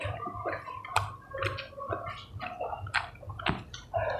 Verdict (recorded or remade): recorded